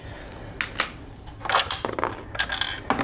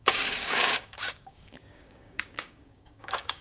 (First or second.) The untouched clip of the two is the first